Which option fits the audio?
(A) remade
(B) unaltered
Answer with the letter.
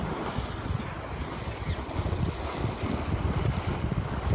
B